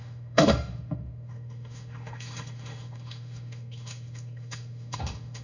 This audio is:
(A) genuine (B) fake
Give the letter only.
B